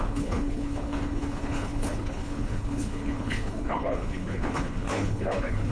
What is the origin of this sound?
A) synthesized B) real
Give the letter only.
A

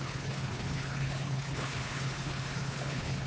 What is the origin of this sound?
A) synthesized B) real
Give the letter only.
A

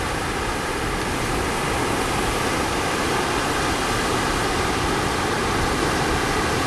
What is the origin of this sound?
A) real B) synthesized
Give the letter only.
A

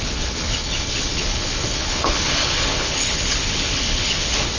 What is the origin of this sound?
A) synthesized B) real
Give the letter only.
A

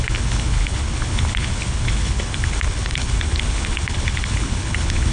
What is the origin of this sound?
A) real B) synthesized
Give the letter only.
B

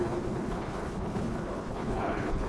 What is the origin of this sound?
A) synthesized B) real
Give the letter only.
A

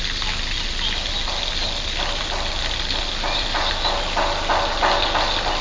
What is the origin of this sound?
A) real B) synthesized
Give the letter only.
A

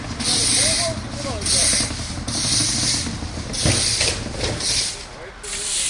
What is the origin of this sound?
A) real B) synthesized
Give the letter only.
A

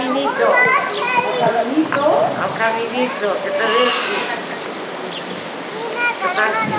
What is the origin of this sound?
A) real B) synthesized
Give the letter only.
A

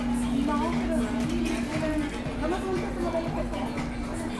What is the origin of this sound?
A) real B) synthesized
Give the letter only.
A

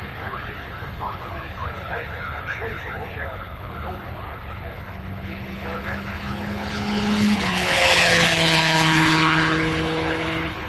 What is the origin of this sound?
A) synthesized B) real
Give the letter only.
A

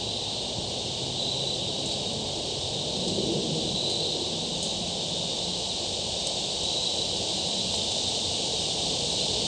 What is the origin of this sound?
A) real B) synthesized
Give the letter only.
A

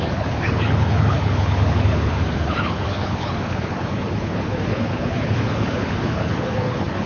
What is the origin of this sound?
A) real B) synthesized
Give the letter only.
B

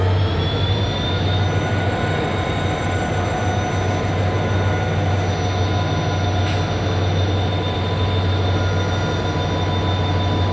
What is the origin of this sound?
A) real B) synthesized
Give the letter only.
A